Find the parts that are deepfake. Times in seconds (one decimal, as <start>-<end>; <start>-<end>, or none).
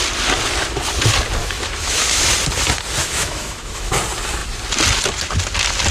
1.4-2.3; 3.0-3.9